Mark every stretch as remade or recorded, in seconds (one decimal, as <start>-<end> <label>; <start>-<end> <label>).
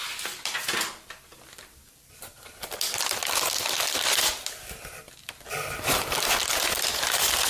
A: 0.0-7.5 recorded